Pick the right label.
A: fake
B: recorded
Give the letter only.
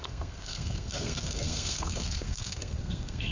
A